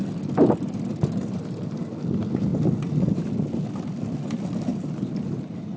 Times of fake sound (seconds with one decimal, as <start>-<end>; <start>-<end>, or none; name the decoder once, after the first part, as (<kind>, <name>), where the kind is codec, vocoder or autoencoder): 1.2-1.8 (vocoder, BigVGAN v2); 4.7-5.8